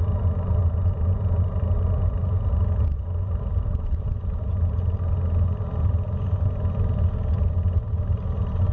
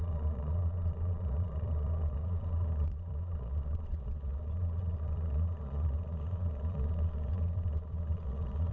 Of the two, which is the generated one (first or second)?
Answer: second